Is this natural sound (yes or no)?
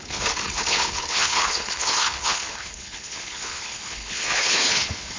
no